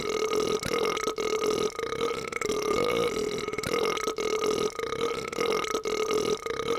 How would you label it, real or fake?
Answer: real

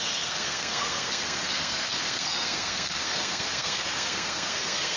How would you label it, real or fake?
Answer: fake